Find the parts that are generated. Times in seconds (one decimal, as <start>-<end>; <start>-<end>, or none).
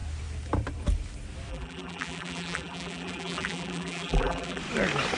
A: 1.5-4.6